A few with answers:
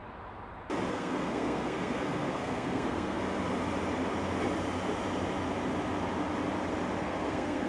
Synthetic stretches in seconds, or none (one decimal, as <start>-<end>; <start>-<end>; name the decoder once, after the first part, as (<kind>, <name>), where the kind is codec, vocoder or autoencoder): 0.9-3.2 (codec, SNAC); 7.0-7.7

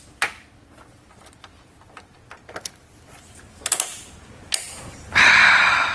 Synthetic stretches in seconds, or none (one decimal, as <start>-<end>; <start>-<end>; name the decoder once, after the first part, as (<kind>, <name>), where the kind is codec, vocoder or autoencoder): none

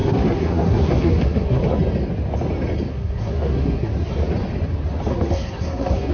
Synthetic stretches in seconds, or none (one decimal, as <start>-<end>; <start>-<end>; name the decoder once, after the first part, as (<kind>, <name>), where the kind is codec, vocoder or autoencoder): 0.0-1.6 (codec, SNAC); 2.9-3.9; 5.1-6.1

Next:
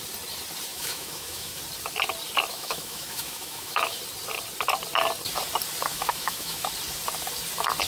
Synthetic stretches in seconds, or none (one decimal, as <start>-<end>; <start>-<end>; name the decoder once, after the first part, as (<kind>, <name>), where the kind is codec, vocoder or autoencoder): 0.7-1.6 (autoencoder, DAC-VAE); 2.5-4.0; 5.9-6.7